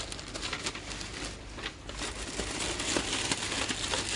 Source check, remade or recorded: recorded